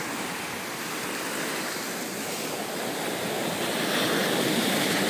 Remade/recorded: recorded